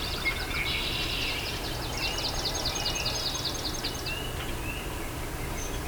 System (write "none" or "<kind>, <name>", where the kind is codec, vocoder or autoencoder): none